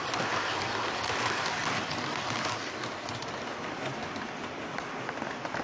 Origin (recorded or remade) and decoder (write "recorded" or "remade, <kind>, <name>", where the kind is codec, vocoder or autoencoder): recorded